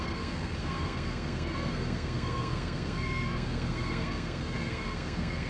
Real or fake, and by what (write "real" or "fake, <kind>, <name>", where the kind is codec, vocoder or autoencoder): fake, codec, SNAC